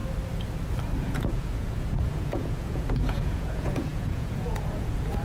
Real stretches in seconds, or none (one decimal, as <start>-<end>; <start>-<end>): 0.0-1.0